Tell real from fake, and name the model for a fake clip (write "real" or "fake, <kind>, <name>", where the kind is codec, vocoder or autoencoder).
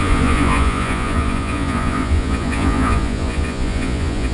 fake, vocoder, Vocos